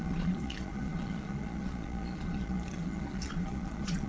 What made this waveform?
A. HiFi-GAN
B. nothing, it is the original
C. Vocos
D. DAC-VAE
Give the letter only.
C